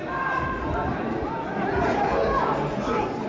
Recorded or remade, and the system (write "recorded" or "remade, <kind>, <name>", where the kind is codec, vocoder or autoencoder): recorded